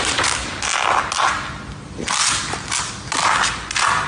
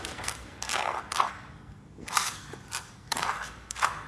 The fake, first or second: second